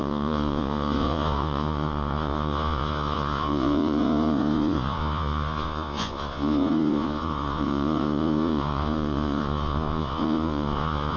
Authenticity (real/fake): fake